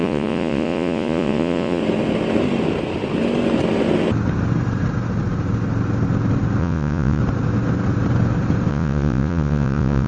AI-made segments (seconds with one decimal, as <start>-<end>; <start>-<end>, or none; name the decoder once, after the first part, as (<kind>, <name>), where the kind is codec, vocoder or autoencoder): 0.0-1.8 (vocoder, Vocos); 6.6-7.2; 8.7-10.1